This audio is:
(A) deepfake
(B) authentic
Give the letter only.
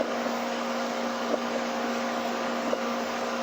A